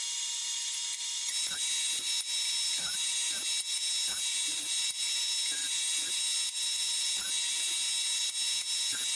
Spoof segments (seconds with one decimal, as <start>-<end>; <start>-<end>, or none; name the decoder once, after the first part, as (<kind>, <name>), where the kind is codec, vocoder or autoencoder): none